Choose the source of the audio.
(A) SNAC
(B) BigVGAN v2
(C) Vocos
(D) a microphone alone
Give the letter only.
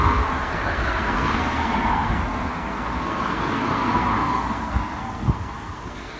A